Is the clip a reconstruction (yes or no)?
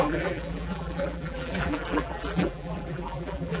yes